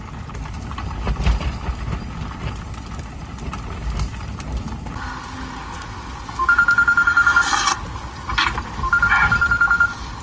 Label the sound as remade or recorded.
recorded